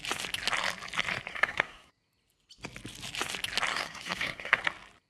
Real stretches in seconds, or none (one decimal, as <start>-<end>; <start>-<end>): 0.0-1.3; 1.9-3.7; 4.6-5.1